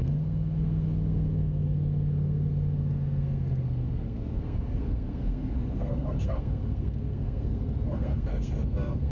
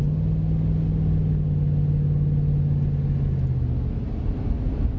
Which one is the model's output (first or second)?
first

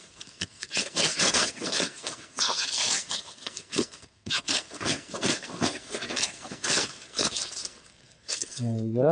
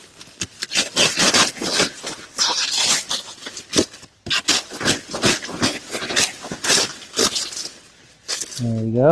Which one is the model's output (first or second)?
first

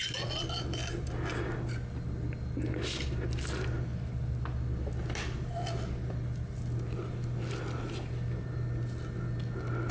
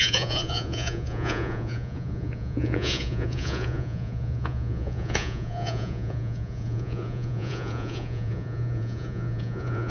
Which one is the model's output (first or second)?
second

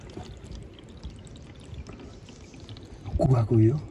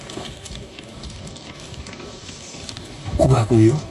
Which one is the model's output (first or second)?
second